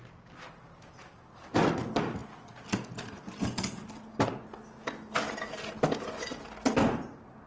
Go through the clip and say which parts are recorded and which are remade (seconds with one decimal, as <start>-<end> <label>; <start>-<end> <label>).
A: 0.0-7.5 recorded